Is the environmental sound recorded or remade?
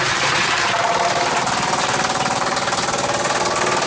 recorded